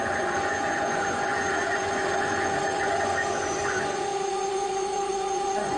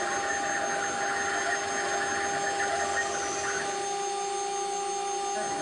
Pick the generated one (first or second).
first